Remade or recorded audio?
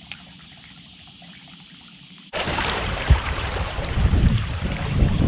remade